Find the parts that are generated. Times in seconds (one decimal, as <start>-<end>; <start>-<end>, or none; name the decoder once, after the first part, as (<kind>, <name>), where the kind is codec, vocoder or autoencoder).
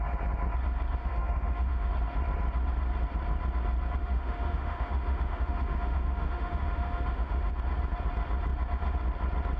1.0-1.9 (autoencoder, DAC-VAE); 4.0-7.5